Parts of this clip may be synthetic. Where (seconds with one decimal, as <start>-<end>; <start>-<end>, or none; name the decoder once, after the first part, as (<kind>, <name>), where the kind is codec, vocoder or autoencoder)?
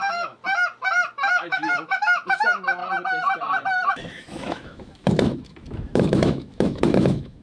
0.0-0.4 (autoencoder, DAC-VAE); 1.3-2.8; 3.9-7.4